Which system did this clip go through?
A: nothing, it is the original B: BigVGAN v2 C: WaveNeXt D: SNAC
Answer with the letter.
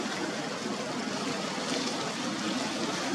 A